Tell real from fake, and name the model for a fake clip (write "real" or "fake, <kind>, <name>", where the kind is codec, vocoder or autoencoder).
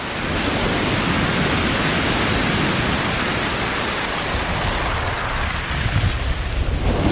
real